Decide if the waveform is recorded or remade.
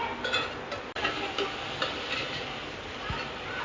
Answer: recorded